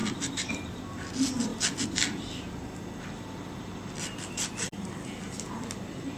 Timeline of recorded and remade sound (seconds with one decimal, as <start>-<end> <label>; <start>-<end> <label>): 0.0-6.2 recorded